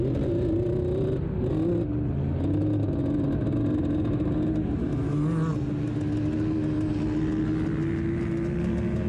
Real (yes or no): yes